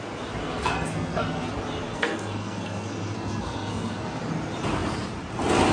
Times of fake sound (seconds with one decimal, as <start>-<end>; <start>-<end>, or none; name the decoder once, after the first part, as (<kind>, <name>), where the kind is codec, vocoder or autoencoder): 0.4-1.5 (codec, SNAC); 1.9-4.2

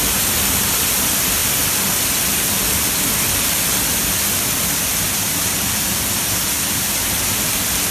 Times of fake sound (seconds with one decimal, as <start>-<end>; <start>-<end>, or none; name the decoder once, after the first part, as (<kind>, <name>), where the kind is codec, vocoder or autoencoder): none